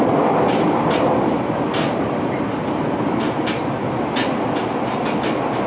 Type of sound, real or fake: real